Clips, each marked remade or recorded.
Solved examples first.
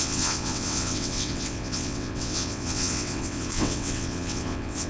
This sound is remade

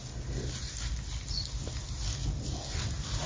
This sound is recorded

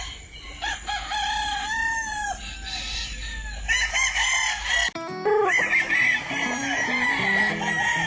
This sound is recorded